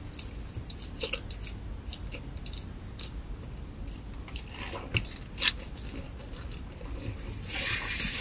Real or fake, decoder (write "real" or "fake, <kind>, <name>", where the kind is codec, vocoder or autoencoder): real